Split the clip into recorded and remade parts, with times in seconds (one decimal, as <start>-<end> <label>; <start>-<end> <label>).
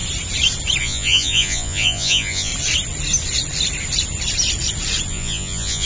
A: 0.0-0.8 recorded; 0.8-2.5 remade; 2.5-5.1 recorded; 5.1-5.9 remade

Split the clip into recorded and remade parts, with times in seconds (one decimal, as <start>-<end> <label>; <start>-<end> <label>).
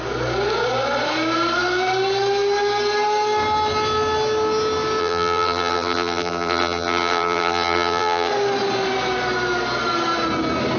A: 0.0-5.0 recorded; 5.0-8.3 remade; 8.3-10.8 recorded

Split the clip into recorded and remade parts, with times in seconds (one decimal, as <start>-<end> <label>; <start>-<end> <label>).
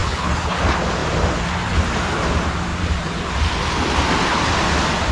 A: 0.0-0.6 remade; 0.6-5.1 recorded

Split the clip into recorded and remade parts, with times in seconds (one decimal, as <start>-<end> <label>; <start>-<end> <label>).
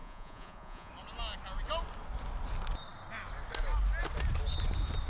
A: 0.0-0.9 remade; 0.9-5.1 recorded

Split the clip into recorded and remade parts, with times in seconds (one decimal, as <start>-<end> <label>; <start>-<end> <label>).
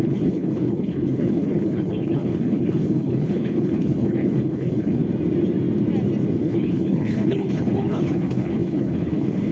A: 0.0-5.0 remade; 5.0-6.4 recorded; 6.4-9.5 remade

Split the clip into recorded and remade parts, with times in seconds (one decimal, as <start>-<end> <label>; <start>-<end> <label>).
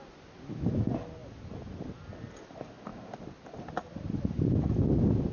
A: 0.0-5.3 recorded